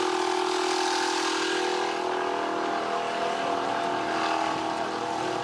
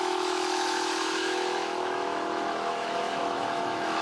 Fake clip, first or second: second